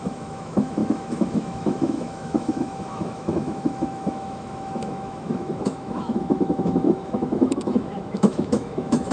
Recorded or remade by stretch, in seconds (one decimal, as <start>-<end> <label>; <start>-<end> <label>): 0.0-9.1 remade